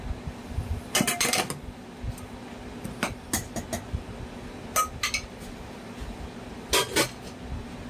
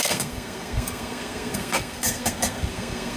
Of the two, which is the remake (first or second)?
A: second